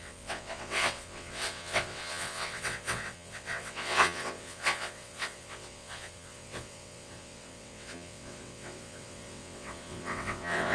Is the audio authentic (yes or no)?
no